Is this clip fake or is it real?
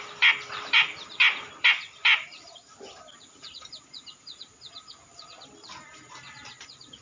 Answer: fake